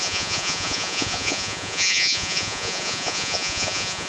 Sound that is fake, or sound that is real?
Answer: fake